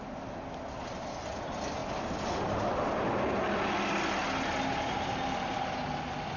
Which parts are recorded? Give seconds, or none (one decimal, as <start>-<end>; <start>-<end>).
0.0-6.4